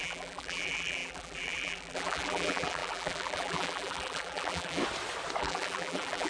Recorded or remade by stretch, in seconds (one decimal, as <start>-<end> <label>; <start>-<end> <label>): 0.0-4.8 remade; 4.8-5.4 recorded; 5.4-6.3 remade